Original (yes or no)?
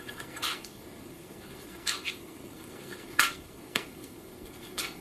no